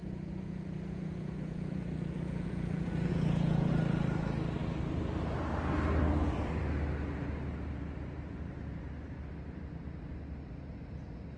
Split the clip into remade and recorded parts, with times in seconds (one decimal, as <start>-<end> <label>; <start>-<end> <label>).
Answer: 0.0-3.7 remade; 3.7-11.4 recorded